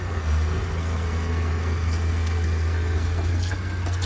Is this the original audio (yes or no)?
no